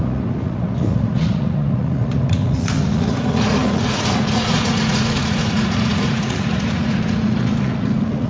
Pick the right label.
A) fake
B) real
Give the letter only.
A